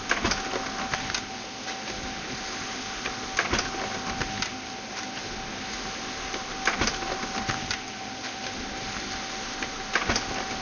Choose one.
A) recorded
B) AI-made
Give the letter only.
A